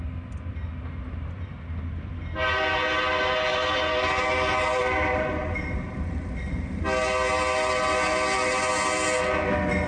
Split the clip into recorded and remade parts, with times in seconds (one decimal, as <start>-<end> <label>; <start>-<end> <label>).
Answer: 0.0-3.5 recorded; 3.5-4.1 remade; 4.1-4.8 recorded; 4.8-6.3 remade; 6.3-9.9 recorded